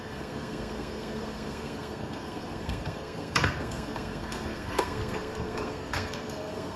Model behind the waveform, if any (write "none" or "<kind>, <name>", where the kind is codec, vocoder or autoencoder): codec, SNAC